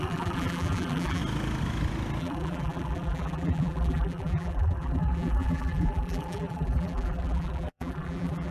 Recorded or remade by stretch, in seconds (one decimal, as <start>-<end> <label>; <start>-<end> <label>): 0.0-1.2 remade; 1.2-2.2 recorded; 2.2-8.5 remade